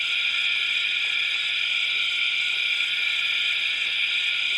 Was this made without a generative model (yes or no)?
yes